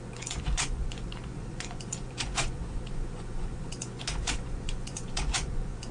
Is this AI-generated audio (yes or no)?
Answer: yes